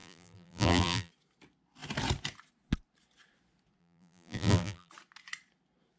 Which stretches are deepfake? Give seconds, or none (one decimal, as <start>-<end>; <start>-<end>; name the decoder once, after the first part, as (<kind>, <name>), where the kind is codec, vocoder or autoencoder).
0.0-1.1 (vocoder, BigVGAN v2); 3.8-4.9